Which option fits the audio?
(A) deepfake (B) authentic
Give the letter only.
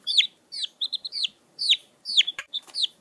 A